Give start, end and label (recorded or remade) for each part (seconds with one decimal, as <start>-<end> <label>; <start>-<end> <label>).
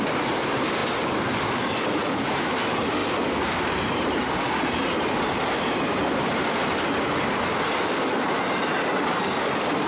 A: 0.0-9.9 recorded